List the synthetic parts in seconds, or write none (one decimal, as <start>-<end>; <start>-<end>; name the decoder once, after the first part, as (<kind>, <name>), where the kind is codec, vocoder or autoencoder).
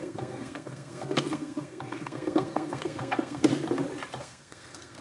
0.0-3.5 (codec, SNAC); 4.2-5.0